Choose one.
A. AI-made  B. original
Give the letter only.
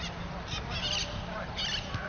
B